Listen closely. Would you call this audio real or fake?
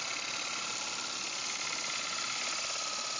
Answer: real